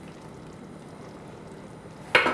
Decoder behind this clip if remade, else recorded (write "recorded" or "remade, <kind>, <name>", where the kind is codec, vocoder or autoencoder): recorded